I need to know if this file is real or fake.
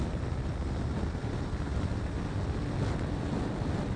real